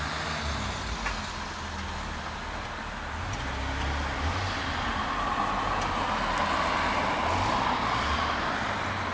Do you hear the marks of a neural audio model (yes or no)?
no